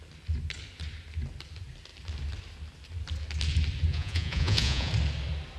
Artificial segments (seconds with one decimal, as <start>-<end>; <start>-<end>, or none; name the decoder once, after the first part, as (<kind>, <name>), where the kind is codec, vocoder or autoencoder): 3.9-4.9 (vocoder, Vocos)